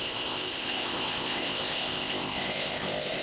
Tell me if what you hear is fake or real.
fake